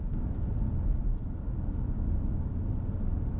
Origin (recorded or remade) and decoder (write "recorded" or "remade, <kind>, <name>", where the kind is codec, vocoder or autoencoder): recorded